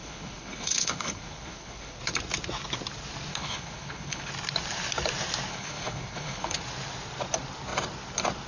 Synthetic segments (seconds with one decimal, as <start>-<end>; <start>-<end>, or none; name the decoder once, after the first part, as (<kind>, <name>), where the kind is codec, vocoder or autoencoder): 0.0-2.0 (codec, HILCodec); 3.3-4.3; 5.5-6.6